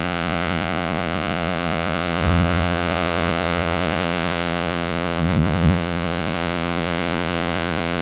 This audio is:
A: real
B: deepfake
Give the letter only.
B